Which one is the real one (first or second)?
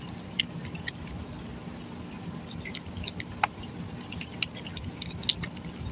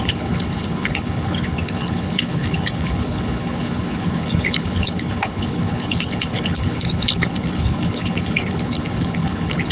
first